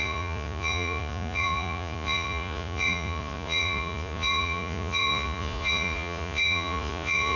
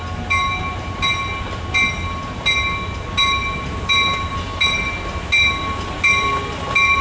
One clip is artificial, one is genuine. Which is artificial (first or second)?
first